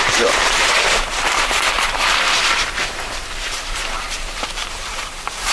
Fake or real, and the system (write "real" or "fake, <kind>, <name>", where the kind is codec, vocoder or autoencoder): fake, vocoder, BigVGAN v2